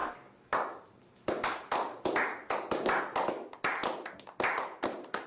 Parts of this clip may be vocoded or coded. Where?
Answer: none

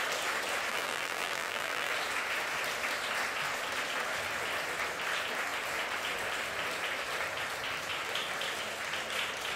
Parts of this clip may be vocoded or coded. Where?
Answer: 0.7-1.9